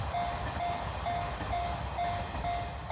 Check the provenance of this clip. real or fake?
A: real